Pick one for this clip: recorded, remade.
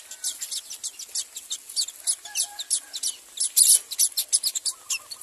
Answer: recorded